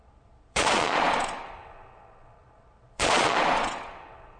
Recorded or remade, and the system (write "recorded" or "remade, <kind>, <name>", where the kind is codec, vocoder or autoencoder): remade, vocoder, Vocos